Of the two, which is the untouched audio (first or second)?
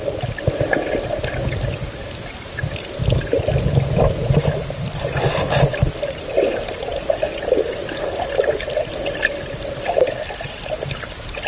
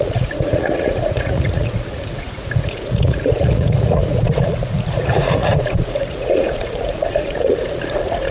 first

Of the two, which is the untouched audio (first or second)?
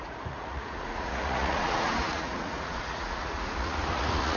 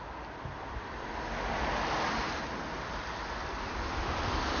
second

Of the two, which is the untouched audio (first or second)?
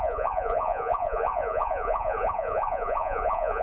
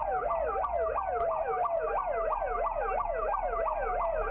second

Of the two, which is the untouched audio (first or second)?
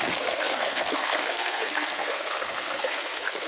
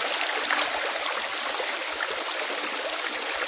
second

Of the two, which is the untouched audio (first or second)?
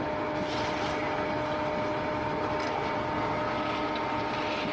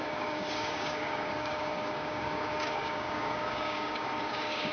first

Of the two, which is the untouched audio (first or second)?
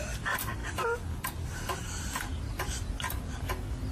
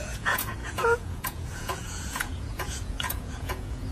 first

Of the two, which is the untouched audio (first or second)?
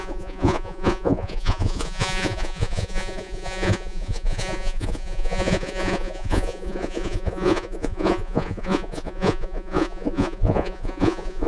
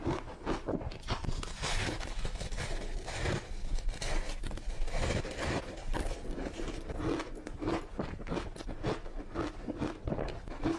second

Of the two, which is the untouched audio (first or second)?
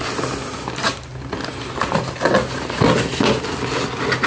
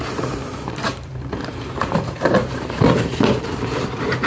first